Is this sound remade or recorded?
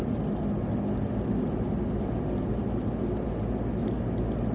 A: recorded